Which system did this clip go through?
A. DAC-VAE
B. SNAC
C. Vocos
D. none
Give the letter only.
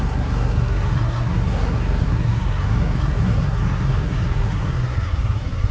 B